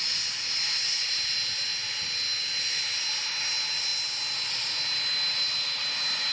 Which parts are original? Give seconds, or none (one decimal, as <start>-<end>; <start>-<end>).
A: 0.0-6.3

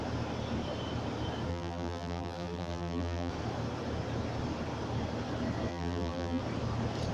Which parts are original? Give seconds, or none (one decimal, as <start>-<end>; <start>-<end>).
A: 0.0-1.5; 3.3-5.7; 6.4-7.1